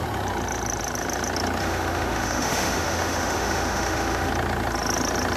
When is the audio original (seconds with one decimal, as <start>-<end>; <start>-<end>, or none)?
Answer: 0.0-1.6; 4.3-5.4